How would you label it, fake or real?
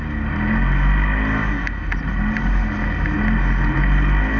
real